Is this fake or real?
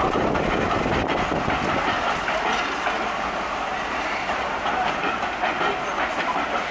real